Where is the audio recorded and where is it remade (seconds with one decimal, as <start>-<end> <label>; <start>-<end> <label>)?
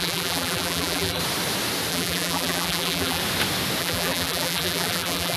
0.0-1.2 remade; 1.2-1.9 recorded; 1.9-3.2 remade; 3.2-3.8 recorded; 3.8-5.4 remade